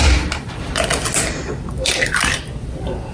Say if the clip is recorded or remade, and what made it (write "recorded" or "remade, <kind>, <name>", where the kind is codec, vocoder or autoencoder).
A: recorded